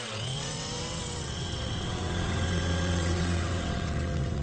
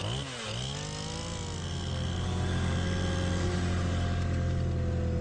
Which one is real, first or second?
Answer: second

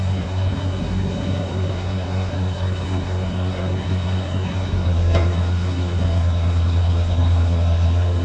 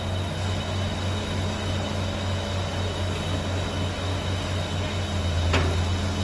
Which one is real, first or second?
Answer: second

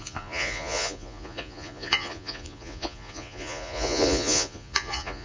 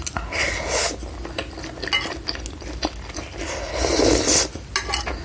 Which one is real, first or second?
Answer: second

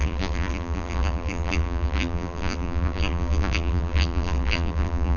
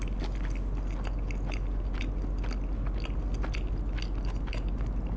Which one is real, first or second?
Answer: second